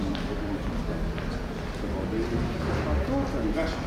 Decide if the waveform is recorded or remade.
recorded